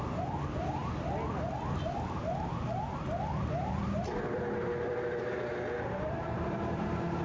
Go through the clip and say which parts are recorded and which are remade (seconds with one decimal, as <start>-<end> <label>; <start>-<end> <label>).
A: 0.0-3.8 recorded; 3.8-7.2 remade